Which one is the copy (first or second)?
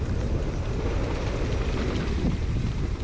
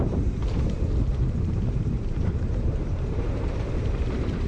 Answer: second